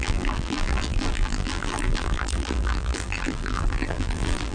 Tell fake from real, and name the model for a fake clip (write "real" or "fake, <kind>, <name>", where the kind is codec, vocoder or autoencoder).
fake, vocoder, BigVGAN v2